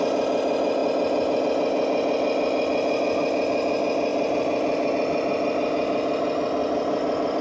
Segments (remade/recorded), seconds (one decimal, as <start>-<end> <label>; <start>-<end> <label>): 0.0-4.1 recorded; 4.1-4.9 remade; 4.9-6.6 recorded; 6.6-7.4 remade